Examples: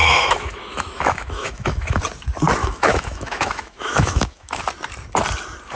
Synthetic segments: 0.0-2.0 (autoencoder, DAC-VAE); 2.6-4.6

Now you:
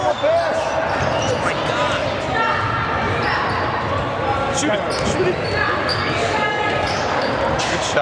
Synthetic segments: 5.9-7.4 (codec, DAC)